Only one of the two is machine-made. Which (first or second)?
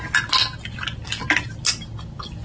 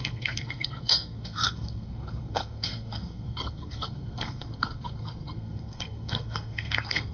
second